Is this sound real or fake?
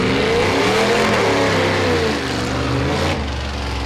real